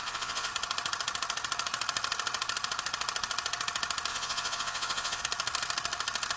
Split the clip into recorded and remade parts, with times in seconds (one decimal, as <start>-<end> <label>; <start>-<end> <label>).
0.0-0.5 remade; 0.5-4.1 recorded; 4.1-5.2 remade; 5.2-6.4 recorded